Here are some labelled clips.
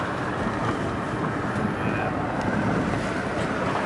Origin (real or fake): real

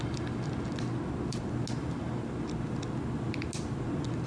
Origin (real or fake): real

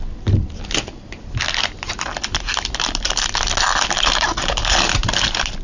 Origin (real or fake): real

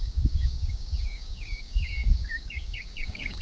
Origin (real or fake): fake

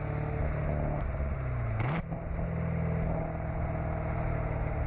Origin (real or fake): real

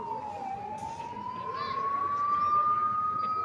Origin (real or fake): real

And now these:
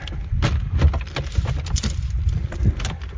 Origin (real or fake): real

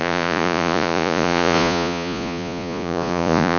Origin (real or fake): fake